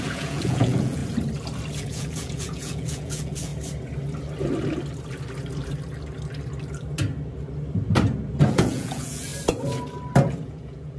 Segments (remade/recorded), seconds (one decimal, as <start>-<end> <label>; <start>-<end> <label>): 0.0-1.0 remade; 1.0-1.8 recorded; 1.8-3.5 remade; 3.5-8.5 recorded; 8.5-9.3 remade; 9.3-10.4 recorded; 10.4-11.0 remade